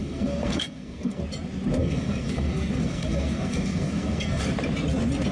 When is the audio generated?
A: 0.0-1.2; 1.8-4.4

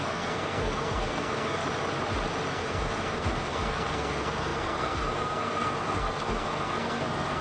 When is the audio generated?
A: 0.0-1.6; 2.5-7.4

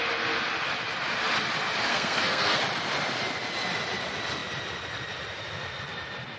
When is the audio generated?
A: 1.9-2.6

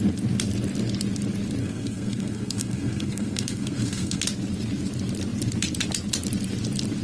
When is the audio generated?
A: 1.6-4.2

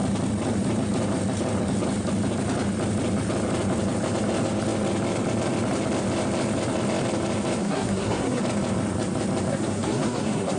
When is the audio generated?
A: 7.6-8.4; 9.5-10.6